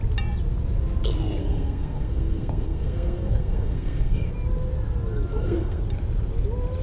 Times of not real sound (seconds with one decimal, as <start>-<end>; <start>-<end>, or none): 1.4-4.3; 5.3-5.8